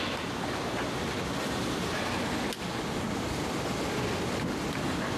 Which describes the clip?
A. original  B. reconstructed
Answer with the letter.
A